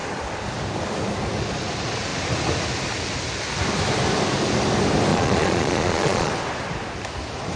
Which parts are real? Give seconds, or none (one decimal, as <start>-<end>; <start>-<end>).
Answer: 0.0-5.1; 6.3-7.6